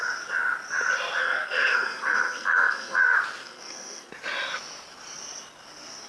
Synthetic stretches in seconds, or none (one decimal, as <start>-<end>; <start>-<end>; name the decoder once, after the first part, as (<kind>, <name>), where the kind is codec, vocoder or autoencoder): 1.2-3.0 (codec, SNAC); 3.4-4.1